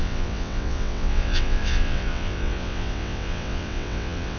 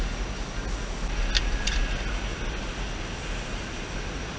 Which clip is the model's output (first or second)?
first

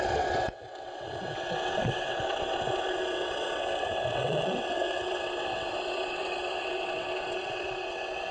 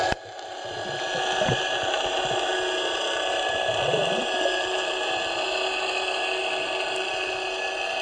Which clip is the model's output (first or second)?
first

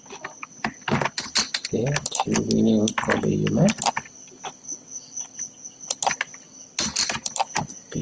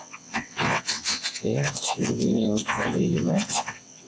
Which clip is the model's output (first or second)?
second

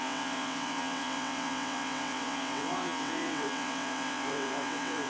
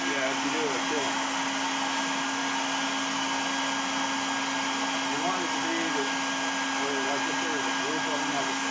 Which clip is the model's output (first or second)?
first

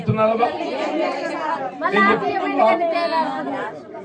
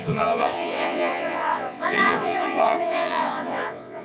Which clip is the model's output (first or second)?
second